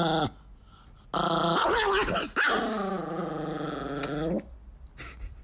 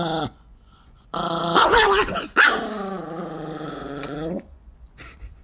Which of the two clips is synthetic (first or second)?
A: second